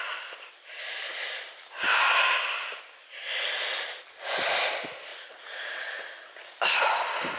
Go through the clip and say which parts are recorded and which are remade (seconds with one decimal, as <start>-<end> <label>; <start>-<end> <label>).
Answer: 0.0-5.1 recorded; 5.1-5.7 remade; 5.7-7.4 recorded